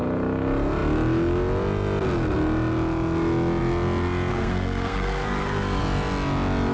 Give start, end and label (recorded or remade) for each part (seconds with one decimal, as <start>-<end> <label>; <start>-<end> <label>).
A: 0.0-4.3 recorded; 4.3-5.8 remade; 5.8-6.7 recorded